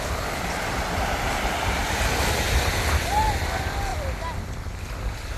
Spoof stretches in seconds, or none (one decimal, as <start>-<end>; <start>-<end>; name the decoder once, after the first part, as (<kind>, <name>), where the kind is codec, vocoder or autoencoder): none